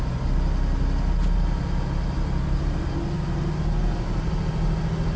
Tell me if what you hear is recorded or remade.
recorded